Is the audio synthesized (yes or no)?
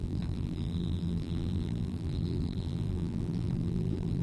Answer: yes